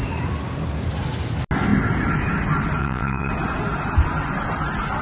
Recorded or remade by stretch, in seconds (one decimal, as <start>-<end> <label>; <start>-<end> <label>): 0.0-2.8 recorded; 2.8-3.3 remade; 3.3-5.0 recorded